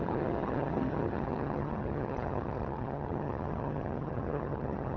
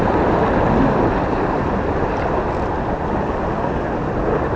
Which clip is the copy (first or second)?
first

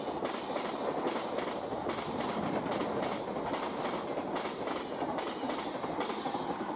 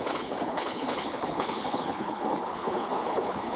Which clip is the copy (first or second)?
second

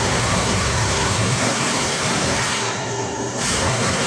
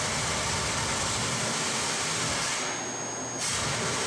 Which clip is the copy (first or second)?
first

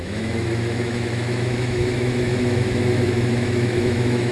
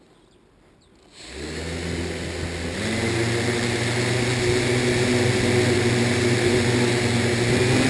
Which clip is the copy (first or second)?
first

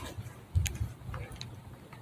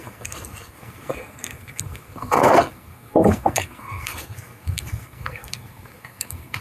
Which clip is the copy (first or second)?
second